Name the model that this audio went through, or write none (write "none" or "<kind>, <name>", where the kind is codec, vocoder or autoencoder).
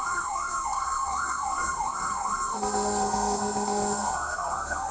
codec, SNAC